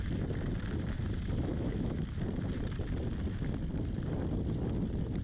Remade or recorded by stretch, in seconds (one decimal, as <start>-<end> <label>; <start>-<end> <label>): 0.0-1.5 recorded; 1.5-2.0 remade; 2.0-5.2 recorded